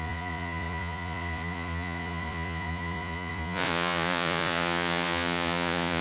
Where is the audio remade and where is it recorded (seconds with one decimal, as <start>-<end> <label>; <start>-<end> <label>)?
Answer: 0.0-6.0 remade